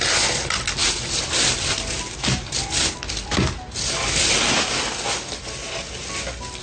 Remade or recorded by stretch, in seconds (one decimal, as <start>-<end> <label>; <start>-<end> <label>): 0.0-6.6 recorded